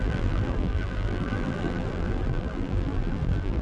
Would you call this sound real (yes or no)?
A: no